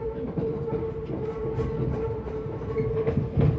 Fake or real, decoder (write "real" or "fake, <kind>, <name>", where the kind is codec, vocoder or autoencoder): real